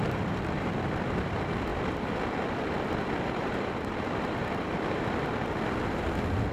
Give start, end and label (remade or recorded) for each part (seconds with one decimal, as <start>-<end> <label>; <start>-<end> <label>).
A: 0.0-6.5 remade